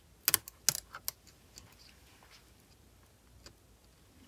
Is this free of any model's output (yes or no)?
yes